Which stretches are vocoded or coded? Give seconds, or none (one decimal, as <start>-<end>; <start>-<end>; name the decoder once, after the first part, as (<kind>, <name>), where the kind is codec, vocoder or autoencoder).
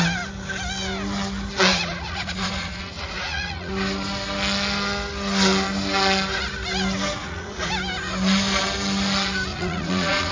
1.7-3.7 (vocoder, Vocos); 7.2-7.7; 9.5-10.3